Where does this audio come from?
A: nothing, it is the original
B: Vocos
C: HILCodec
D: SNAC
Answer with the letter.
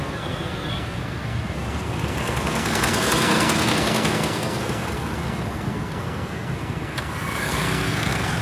D